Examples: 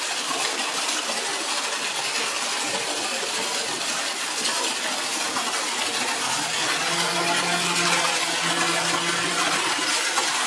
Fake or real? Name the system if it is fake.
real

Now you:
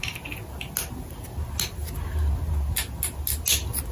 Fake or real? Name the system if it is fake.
real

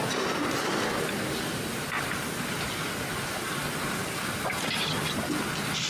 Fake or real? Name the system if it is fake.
real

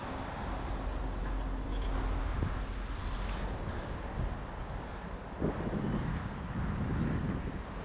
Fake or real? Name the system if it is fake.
real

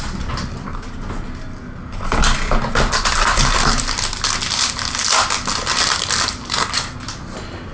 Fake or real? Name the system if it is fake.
real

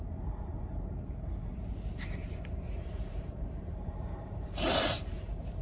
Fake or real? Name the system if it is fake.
fake, vocoder, BigVGAN v2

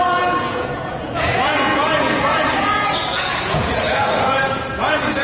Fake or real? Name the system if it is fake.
fake, vocoder, Vocos